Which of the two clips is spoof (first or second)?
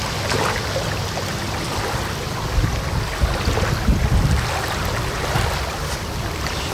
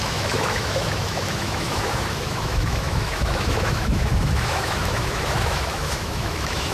second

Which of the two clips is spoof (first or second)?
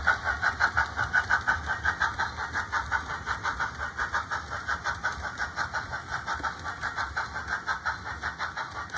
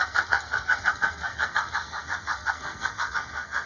second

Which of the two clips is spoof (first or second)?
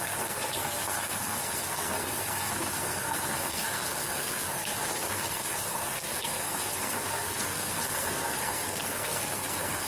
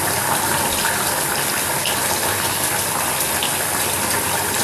first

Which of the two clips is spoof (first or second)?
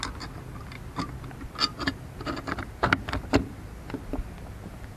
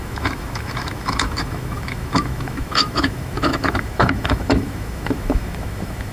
second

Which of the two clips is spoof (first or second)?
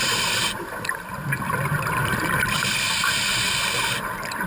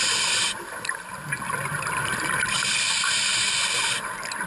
first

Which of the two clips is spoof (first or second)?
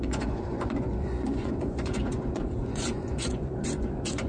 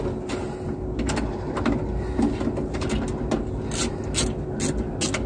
first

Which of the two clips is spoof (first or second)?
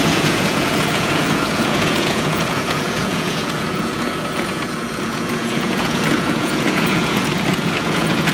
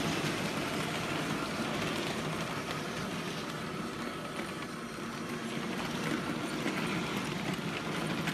first